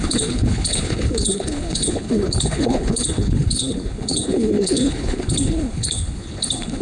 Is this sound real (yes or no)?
no